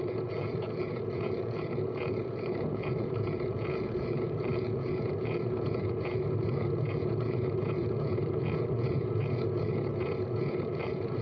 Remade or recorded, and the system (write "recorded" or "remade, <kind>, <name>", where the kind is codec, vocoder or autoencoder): remade, vocoder, Vocos